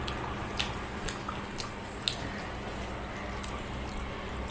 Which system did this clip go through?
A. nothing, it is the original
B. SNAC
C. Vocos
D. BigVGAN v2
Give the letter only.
A